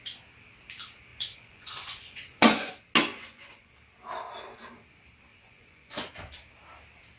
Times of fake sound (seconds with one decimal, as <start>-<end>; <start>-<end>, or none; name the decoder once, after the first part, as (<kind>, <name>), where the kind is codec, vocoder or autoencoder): 1.1-2.7 (vocoder, Vocos); 3.1-3.7; 5.3-6.1